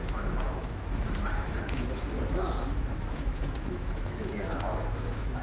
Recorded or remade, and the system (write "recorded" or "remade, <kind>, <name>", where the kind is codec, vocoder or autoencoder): remade, autoencoder, DAC-VAE